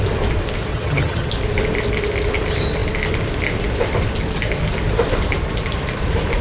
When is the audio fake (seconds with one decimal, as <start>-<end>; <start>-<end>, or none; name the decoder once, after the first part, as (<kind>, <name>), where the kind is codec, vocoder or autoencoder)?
0.7-1.3 (vocoder, HiFi-GAN)